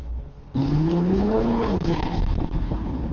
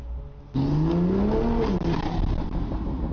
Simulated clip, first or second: first